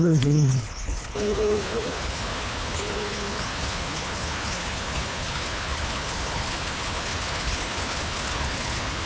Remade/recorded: remade